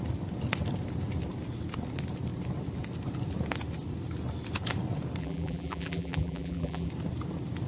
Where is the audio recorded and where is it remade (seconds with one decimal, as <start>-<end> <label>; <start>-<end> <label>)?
0.0-5.2 recorded; 5.2-6.9 remade; 6.9-7.7 recorded